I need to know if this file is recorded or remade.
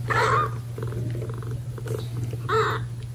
recorded